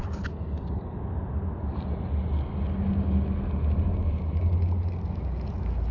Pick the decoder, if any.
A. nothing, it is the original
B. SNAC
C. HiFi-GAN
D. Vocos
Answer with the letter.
A